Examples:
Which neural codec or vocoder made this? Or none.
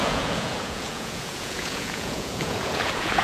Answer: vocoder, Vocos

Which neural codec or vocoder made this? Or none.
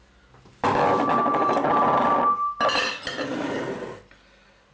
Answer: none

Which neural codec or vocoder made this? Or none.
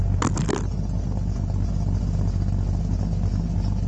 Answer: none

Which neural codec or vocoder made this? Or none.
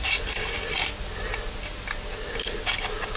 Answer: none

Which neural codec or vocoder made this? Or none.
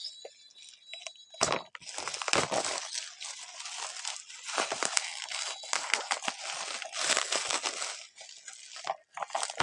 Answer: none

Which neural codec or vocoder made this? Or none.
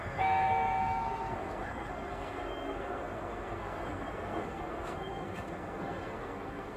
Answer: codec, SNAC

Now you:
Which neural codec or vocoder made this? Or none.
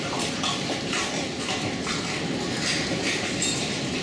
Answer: none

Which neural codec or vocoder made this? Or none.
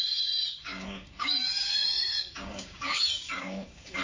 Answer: codec, DAC